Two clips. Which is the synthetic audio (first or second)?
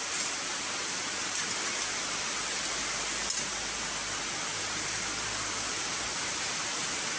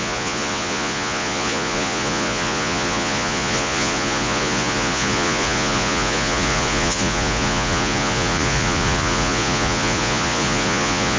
second